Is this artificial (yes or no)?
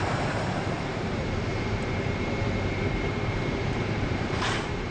yes